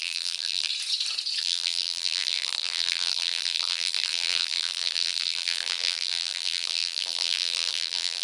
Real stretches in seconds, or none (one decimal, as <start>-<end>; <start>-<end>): 0.7-1.4